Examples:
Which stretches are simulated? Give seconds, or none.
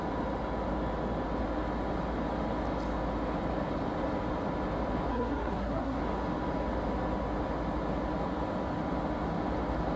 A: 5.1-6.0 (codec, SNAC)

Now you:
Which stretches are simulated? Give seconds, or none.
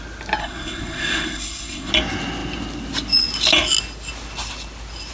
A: 0.4-1.9 (codec, SNAC)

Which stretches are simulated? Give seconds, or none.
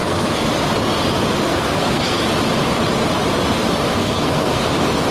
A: 0.0-0.5 (codec, SNAC); 1.5-2.2; 3.9-4.6